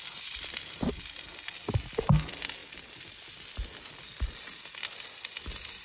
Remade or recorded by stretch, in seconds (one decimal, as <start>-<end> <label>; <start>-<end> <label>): 0.0-5.8 recorded